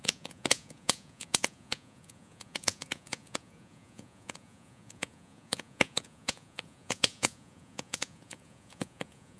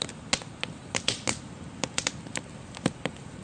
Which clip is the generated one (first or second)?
first